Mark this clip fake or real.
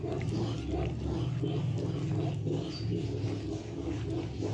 real